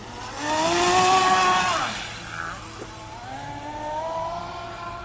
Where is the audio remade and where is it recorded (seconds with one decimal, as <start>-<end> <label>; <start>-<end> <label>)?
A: 0.0-5.0 recorded